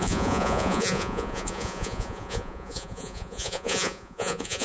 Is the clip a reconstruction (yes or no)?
yes